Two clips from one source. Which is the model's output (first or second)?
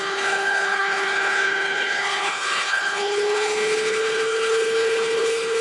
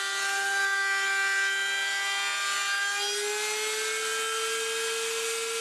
first